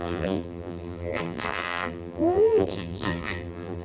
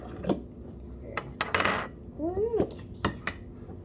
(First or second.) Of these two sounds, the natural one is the second